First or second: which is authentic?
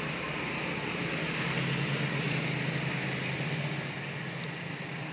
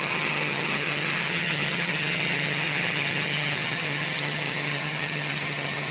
first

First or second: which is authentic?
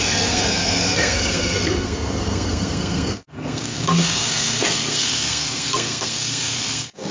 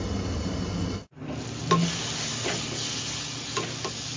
second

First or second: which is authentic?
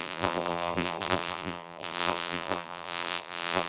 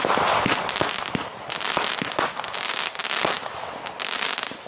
second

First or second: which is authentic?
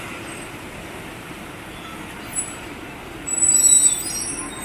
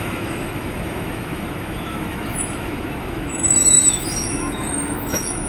first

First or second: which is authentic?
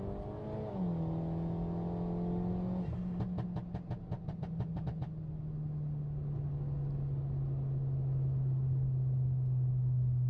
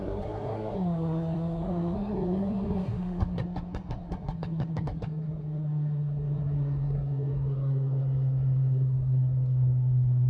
first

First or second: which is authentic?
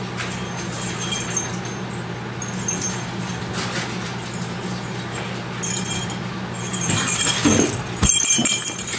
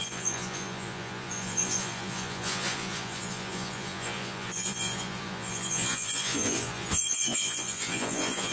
first